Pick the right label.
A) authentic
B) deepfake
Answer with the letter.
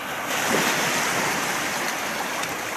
A